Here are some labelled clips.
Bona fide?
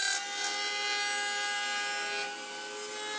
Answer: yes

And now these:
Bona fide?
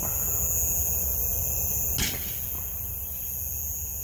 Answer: yes